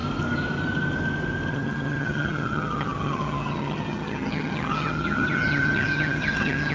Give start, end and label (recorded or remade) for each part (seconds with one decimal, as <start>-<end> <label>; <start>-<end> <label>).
0.0-1.5 recorded; 1.5-6.7 remade